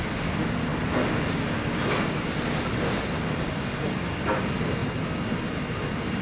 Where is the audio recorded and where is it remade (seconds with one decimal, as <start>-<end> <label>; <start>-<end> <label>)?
0.0-6.2 recorded